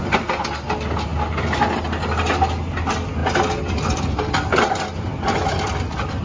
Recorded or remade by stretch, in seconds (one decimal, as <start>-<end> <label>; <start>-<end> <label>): 0.0-6.2 recorded